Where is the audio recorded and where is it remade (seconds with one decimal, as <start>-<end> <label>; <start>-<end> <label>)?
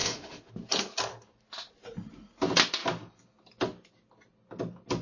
0.0-0.5 remade; 0.5-5.0 recorded